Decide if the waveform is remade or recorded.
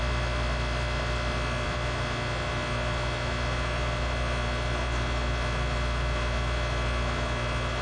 recorded